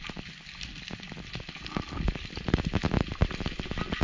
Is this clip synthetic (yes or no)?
no